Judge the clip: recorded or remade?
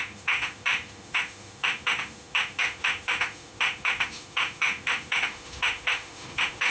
remade